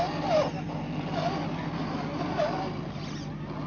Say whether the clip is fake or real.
real